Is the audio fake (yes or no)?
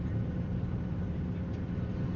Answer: no